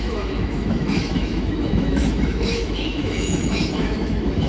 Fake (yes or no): yes